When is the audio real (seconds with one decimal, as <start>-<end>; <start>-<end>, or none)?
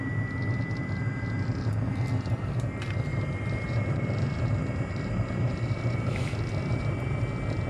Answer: 0.0-3.1; 6.2-6.7; 7.2-7.7